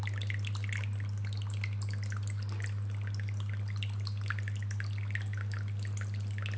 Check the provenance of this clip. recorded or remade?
recorded